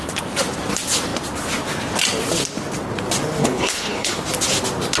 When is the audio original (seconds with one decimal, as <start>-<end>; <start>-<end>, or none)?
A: 0.0-3.4; 4.2-5.0